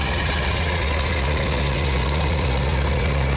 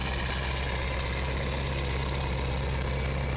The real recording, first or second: second